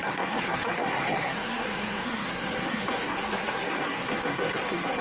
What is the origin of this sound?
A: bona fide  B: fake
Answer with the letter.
B